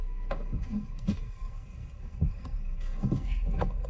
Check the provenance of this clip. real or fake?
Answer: fake